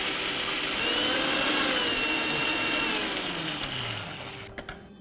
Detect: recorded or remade recorded